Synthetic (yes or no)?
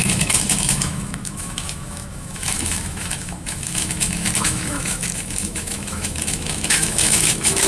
yes